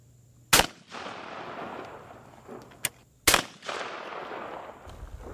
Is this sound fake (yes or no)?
no